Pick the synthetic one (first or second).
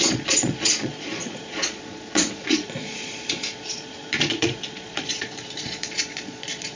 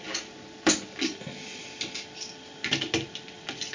first